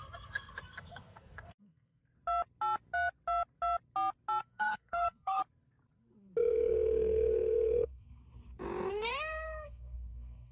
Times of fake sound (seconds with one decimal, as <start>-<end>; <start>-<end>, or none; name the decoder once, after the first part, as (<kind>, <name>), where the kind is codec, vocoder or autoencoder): 0.0-2.0 (codec, SNAC); 4.4-5.4; 6.4-8.2; 8.9-10.5